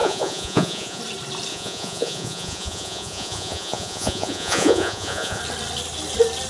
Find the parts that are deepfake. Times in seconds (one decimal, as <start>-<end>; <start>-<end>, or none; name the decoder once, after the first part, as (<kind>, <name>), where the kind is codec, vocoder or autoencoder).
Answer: 0.0-1.0 (vocoder, Vocos); 1.5-5.4